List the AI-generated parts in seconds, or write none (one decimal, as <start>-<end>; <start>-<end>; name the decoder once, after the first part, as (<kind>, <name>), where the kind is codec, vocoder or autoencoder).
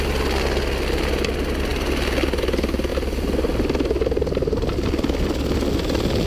none